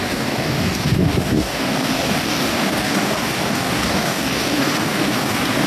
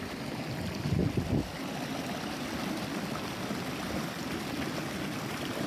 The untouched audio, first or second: second